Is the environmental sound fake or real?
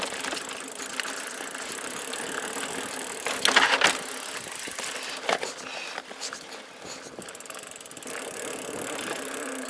real